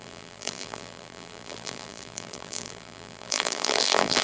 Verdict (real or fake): fake